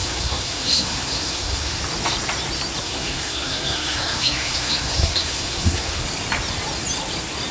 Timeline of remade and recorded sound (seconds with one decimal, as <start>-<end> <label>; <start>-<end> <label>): 0.0-1.8 remade; 1.8-2.8 recorded; 2.8-6.0 remade; 6.0-7.5 recorded

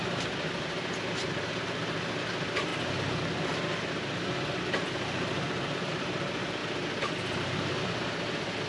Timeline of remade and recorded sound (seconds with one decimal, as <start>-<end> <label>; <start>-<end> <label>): 0.0-2.7 remade; 2.7-5.3 recorded; 5.3-6.6 remade; 6.6-8.7 recorded

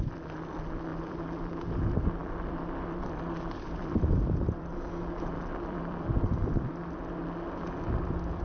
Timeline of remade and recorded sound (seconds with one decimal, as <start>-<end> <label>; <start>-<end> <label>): 0.0-0.9 recorded; 0.9-1.4 remade; 1.4-2.2 recorded; 2.2-7.2 remade; 7.2-8.4 recorded

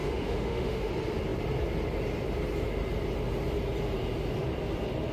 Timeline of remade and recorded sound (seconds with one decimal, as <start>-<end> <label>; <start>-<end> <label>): 0.0-0.9 remade; 0.9-5.1 recorded

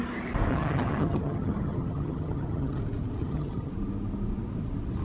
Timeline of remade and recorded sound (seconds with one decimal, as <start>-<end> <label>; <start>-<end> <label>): 0.0-0.5 recorded; 0.5-2.8 remade; 2.8-3.2 recorded; 3.2-3.7 remade; 3.7-5.0 recorded

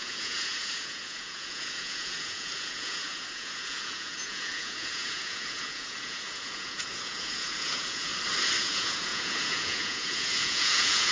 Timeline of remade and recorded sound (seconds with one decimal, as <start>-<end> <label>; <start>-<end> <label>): 0.0-8.1 remade; 8.1-8.6 recorded; 8.6-11.1 remade